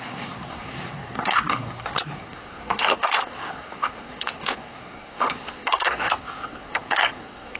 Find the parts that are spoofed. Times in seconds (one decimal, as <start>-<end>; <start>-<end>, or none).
0.0-7.6